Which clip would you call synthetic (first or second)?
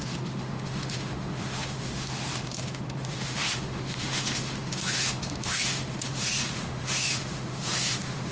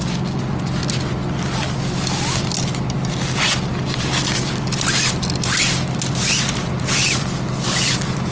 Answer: first